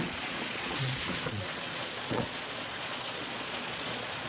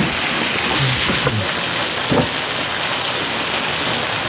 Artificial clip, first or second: first